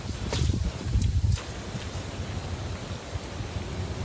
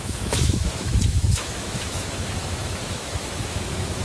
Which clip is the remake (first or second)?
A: second